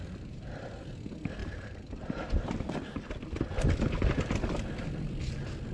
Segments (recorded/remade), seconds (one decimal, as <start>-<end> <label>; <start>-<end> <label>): 0.0-0.9 remade; 0.9-1.4 recorded; 1.4-2.6 remade; 2.6-5.7 recorded